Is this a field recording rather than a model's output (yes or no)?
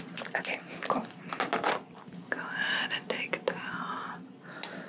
yes